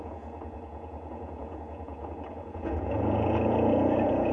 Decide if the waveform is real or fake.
fake